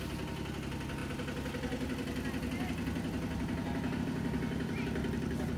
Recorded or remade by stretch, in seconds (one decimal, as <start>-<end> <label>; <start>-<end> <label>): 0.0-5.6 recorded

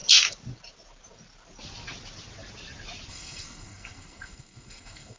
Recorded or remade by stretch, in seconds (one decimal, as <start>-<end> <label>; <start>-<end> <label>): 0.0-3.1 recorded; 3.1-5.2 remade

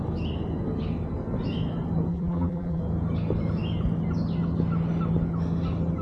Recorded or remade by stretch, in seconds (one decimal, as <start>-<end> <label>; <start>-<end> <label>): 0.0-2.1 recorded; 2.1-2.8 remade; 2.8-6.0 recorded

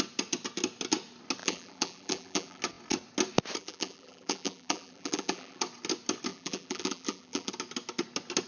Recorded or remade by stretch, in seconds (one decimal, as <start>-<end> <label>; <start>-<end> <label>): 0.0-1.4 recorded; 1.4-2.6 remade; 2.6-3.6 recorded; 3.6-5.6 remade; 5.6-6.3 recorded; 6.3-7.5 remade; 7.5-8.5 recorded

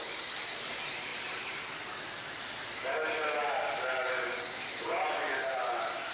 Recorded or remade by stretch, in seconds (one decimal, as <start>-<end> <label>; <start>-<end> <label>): 0.0-1.1 recorded; 1.1-2.2 remade; 2.2-6.1 recorded